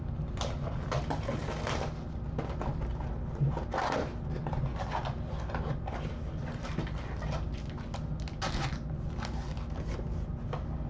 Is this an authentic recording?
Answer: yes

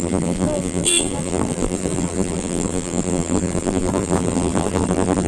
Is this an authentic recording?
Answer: no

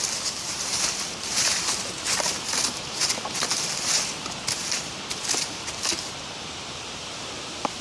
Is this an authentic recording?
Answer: no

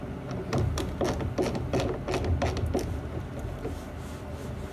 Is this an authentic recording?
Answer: yes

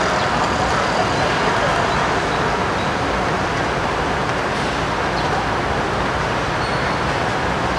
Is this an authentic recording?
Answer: yes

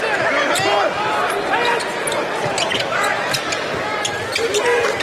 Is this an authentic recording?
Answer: yes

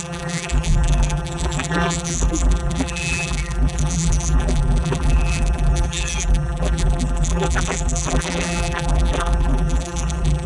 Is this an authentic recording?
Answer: no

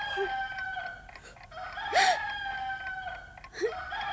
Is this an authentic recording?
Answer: yes